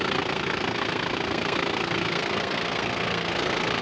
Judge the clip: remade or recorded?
remade